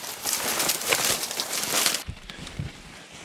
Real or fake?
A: fake